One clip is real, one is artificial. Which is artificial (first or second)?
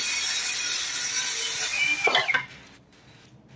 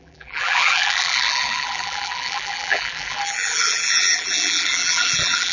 second